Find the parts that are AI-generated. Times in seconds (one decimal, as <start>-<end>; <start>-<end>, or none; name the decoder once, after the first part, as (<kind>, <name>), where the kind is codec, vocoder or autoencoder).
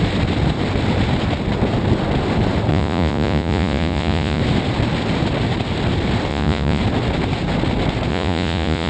2.7-4.4 (vocoder, Vocos); 6.3-6.8; 8.1-8.9